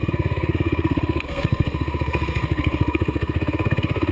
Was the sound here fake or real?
fake